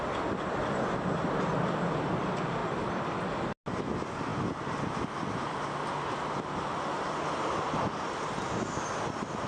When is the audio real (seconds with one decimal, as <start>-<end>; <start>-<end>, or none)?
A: 0.0-9.5